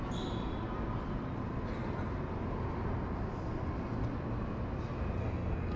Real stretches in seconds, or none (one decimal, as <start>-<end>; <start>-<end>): 0.0-5.2